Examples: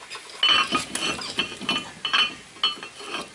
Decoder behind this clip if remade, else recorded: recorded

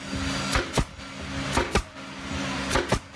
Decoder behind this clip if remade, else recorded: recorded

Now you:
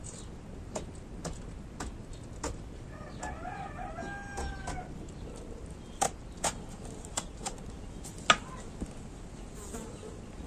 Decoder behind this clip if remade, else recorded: recorded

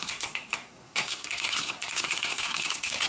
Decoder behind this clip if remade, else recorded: remade, codec, SNAC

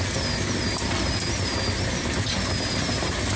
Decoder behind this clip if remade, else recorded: recorded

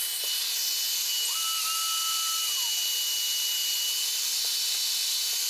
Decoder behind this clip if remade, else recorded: recorded